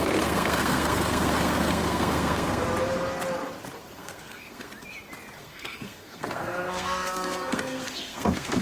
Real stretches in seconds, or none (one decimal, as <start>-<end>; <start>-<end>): 2.6-3.8; 4.7-5.4